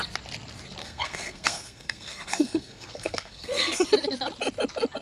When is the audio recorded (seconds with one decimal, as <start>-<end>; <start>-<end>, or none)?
0.0-0.8; 3.8-5.0